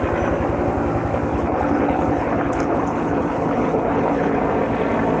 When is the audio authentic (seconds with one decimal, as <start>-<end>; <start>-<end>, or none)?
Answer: 0.0-1.3; 4.4-5.2